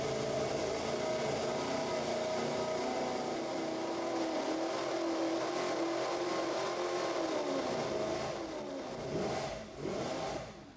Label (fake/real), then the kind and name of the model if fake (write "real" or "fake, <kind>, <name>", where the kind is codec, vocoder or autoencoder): real